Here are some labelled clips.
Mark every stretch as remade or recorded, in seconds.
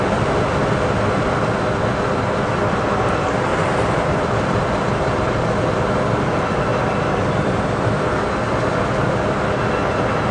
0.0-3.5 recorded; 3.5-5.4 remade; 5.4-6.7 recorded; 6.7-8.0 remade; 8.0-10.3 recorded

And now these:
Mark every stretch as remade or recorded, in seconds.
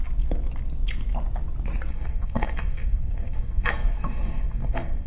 0.0-1.9 recorded; 1.9-5.1 remade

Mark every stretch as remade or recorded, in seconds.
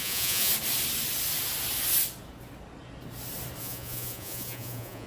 0.0-0.5 remade; 0.5-3.6 recorded; 3.6-5.1 remade